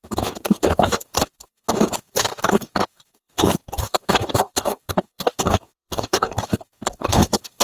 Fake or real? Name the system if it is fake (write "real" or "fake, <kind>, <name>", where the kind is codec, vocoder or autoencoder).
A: fake, codec, DAC